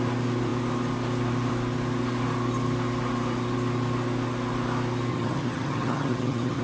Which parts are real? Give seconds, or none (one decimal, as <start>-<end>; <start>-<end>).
0.0-5.1